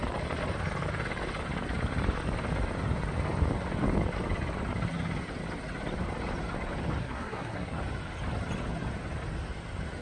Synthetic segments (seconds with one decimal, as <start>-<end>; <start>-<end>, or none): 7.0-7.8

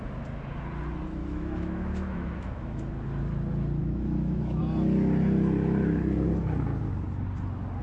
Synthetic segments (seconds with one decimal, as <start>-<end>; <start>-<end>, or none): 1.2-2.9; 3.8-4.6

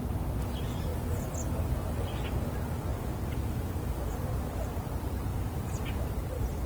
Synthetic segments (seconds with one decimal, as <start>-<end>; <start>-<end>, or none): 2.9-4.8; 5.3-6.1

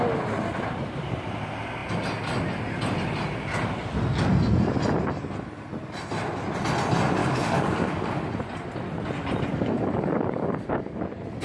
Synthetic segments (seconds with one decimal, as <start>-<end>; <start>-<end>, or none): 7.2-8.1; 9.5-11.0

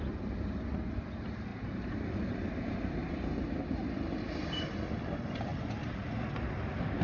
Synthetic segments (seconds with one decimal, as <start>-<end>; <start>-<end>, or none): 1.5-2.1; 3.0-4.7

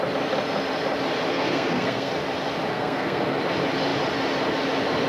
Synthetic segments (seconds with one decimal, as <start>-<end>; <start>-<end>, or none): 1.3-2.1; 2.7-3.4